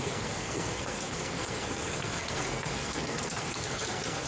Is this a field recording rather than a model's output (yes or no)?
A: no